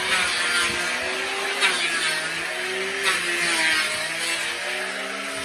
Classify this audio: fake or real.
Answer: real